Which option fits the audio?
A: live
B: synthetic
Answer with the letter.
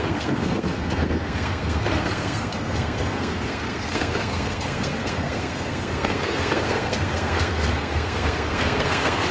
B